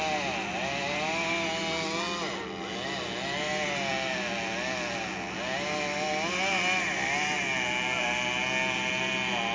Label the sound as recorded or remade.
recorded